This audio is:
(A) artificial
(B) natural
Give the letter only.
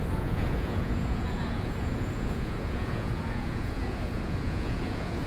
A